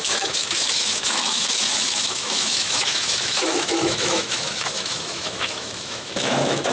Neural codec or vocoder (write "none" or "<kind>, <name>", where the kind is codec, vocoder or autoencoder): autoencoder, DAC-VAE